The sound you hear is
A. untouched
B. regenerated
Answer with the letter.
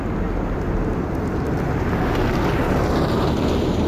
A